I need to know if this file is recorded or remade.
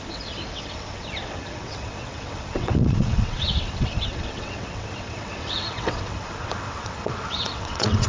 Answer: remade